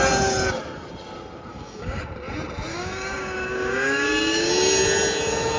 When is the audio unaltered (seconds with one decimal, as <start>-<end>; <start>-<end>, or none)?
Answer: 0.0-1.5; 2.0-2.7; 4.5-5.6